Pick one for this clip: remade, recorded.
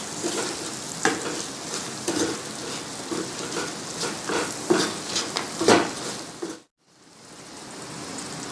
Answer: recorded